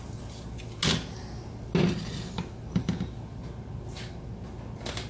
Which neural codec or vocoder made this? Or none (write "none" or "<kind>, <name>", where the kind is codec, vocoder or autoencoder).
none